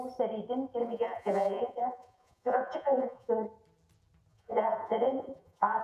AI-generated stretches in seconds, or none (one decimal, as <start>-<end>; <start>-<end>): 0.8-3.3; 4.3-5.8